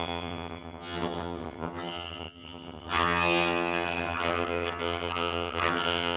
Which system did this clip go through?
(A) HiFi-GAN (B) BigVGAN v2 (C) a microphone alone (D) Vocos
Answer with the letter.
A